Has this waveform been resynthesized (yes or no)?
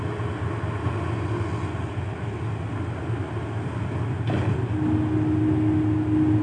no